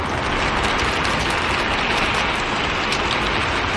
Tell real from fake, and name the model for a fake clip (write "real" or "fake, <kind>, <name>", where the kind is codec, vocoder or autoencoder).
real